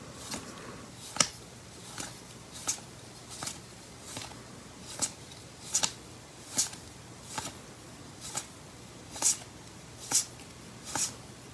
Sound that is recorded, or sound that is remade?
recorded